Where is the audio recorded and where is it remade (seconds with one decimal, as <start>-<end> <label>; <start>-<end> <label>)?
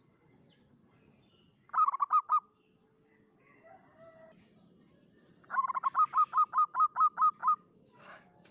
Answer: 0.0-7.4 recorded; 7.4-8.5 remade